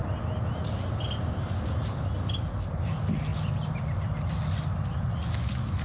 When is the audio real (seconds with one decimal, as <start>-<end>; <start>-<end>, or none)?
0.0-5.8